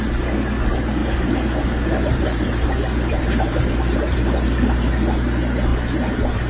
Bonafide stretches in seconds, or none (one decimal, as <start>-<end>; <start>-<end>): 0.0-1.0; 4.9-5.7

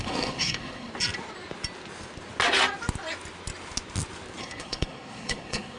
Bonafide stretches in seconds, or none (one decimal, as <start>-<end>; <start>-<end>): 0.9-4.4

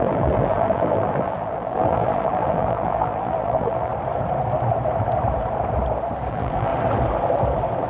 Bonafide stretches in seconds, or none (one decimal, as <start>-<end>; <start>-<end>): 3.9-6.3; 6.7-7.9

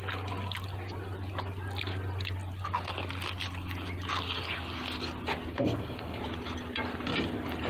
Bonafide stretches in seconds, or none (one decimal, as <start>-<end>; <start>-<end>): 0.0-5.5; 6.2-7.7

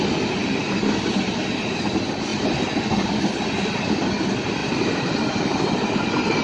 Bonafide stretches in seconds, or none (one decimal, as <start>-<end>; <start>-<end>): 0.0-0.4; 1.2-4.6; 5.4-6.4

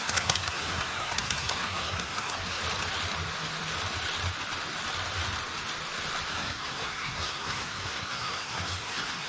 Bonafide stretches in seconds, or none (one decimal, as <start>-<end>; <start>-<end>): 2.6-6.3

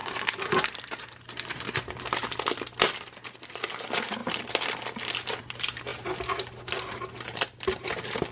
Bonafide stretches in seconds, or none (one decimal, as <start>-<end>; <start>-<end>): 5.9-6.9